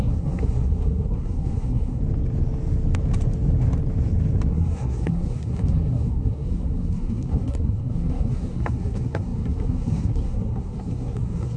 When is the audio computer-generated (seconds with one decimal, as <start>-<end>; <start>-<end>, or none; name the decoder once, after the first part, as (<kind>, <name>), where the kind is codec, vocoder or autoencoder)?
0.0-2.0 (codec, SNAC); 4.5-11.6